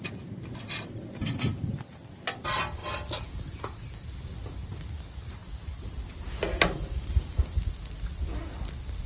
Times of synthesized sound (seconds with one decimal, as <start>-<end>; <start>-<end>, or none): none